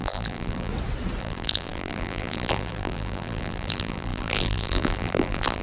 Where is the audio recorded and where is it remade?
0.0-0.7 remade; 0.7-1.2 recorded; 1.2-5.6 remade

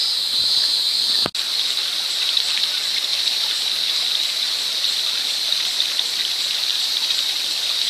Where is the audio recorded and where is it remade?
0.0-1.2 remade; 1.2-2.1 recorded; 2.1-7.9 remade

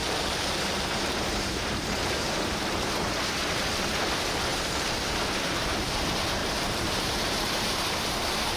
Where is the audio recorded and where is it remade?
0.0-3.0 remade; 3.0-4.5 recorded; 4.5-5.1 remade; 5.1-6.4 recorded; 6.4-8.6 remade

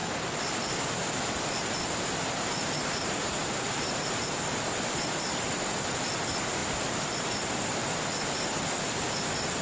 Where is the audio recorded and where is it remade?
0.0-2.8 recorded; 2.8-4.9 remade; 4.9-6.6 recorded; 6.6-7.2 remade; 7.2-9.6 recorded

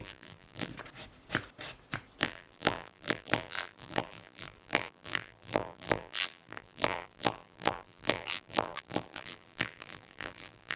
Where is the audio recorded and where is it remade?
0.0-0.7 remade; 0.7-2.2 recorded; 2.2-10.8 remade

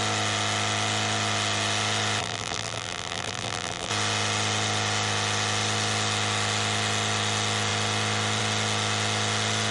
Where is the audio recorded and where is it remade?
0.0-2.2 recorded; 2.2-3.9 remade; 3.9-9.7 recorded